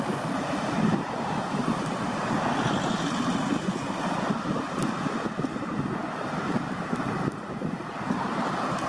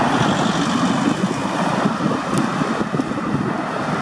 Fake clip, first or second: first